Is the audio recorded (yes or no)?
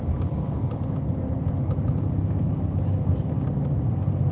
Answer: yes